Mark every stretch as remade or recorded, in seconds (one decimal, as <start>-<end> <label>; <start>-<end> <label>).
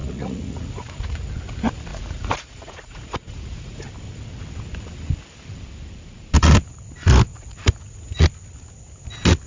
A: 0.0-1.3 remade; 1.3-1.9 recorded; 1.9-3.8 remade; 3.8-7.3 recorded; 7.3-8.2 remade; 8.2-9.5 recorded